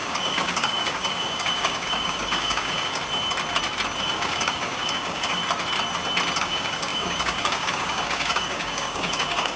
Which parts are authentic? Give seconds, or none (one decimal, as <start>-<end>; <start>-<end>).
3.0-4.0; 5.4-6.4